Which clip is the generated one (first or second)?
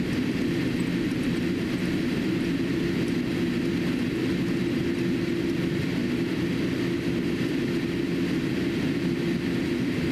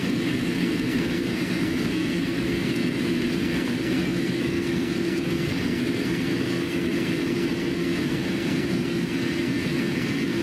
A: second